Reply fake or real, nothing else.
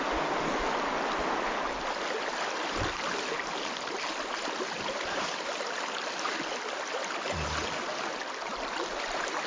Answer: real